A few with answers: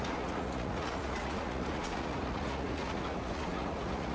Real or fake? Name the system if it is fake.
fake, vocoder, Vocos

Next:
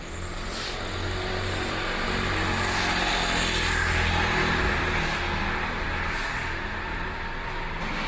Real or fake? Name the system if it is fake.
real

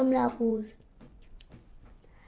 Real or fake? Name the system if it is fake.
fake, vocoder, Vocos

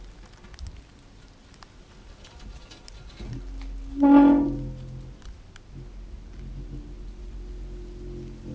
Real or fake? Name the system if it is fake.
real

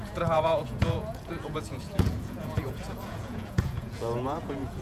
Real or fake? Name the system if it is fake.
fake, vocoder, Vocos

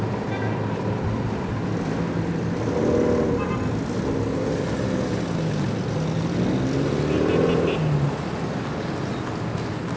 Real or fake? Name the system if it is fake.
real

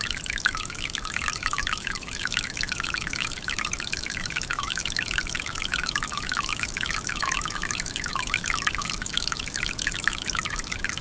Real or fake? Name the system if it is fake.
fake, autoencoder, DAC-VAE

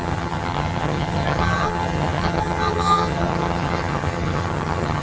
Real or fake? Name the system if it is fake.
fake, vocoder, HiFi-GAN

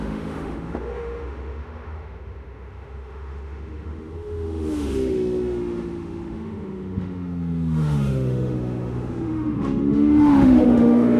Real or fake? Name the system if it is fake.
fake, autoencoder, DAC-VAE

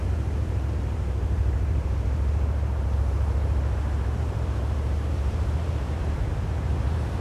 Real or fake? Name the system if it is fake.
fake, vocoder, BigVGAN v2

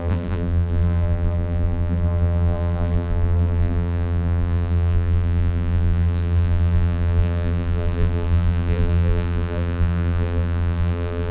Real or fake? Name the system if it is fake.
fake, vocoder, BigVGAN v2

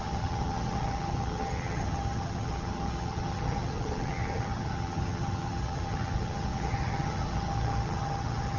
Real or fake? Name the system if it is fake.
fake, vocoder, HiFi-GAN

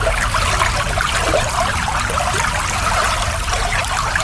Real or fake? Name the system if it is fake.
real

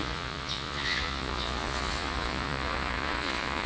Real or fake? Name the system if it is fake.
fake, vocoder, Vocos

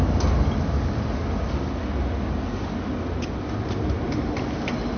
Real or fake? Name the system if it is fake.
real